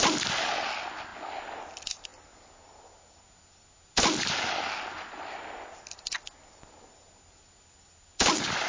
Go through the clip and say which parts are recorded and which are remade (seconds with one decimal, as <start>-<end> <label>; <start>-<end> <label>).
0.0-8.7 recorded